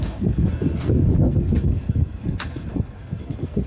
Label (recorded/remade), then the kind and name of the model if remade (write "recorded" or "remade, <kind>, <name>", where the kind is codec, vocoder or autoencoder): remade, codec, SNAC